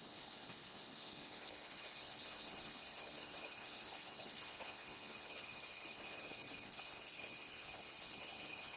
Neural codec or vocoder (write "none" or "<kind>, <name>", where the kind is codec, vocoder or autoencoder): codec, HILCodec